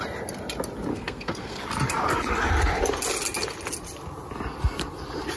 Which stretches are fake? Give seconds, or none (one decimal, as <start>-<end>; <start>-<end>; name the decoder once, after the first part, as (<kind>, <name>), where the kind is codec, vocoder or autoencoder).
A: 0.9-1.6 (codec, SNAC)